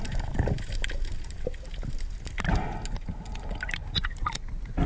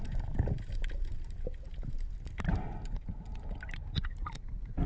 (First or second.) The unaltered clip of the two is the first